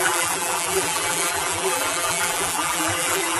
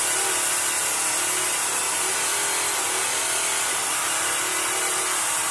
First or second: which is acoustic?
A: second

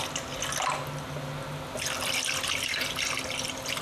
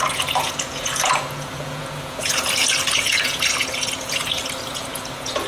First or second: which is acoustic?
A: first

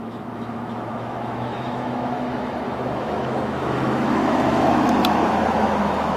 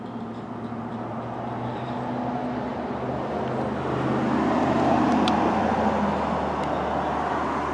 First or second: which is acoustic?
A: second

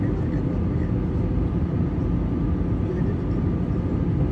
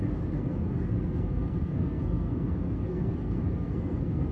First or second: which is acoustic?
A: first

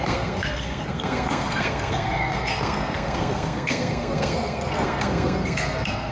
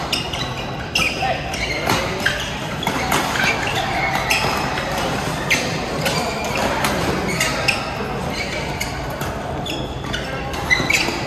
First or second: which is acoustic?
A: second